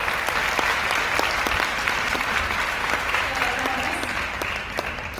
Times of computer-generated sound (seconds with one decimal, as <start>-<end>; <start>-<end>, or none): 2.8-3.3